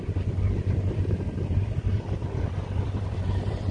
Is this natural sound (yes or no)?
no